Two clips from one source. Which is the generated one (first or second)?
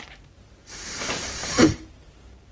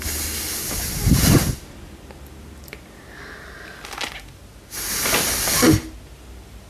first